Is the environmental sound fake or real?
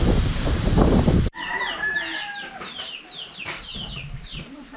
fake